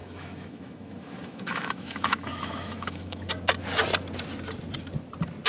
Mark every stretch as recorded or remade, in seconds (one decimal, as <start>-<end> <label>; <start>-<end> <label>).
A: 0.0-3.3 remade; 3.3-5.5 recorded